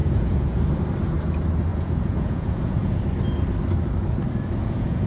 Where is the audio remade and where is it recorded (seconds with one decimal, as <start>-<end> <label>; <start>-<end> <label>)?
0.0-0.6 remade; 0.6-1.7 recorded; 1.7-3.0 remade; 3.0-4.6 recorded; 4.6-5.1 remade